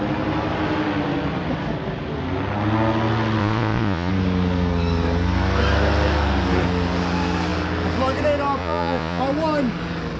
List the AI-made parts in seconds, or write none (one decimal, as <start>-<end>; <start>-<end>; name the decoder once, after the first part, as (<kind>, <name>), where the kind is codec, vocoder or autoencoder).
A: 3.4-4.1 (vocoder, Vocos); 8.6-9.2